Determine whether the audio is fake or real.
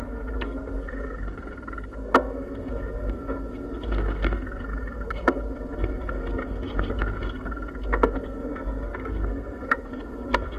fake